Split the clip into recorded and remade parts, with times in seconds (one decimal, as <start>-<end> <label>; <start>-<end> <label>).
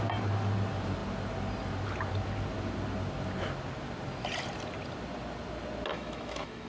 0.0-5.9 recorded; 5.9-6.7 remade